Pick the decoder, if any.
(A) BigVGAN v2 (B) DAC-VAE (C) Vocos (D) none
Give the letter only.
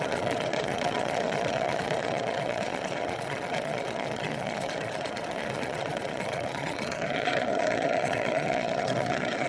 C